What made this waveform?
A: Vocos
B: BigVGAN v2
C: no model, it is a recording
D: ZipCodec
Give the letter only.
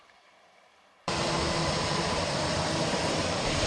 B